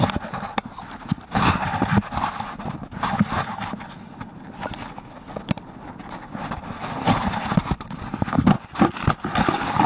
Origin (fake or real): real